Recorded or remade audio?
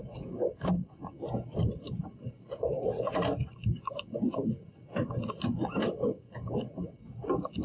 recorded